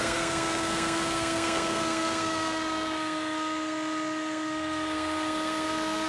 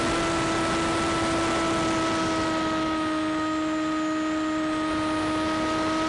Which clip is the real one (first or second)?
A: second